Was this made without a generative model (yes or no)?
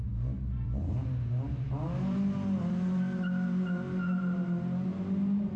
yes